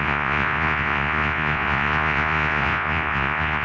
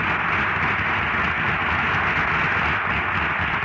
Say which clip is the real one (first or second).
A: second